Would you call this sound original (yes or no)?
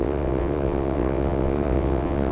no